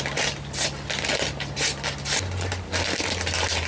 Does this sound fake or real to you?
real